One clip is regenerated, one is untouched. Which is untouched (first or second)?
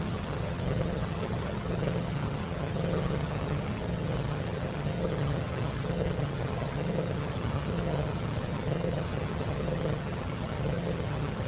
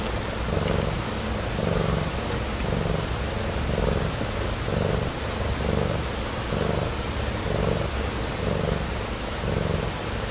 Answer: second